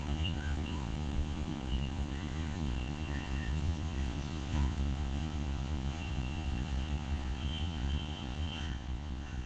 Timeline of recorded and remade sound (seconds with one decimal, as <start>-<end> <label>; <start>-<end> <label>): 0.0-9.5 remade